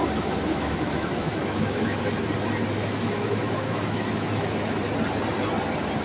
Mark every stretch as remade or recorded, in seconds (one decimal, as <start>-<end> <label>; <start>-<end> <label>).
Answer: 0.0-2.0 remade; 2.0-2.8 recorded; 2.8-4.8 remade; 4.8-6.0 recorded